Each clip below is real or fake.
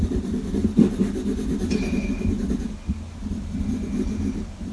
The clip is real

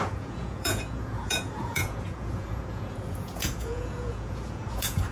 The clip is fake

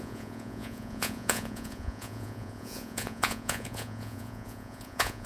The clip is fake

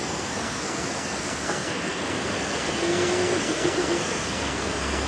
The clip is fake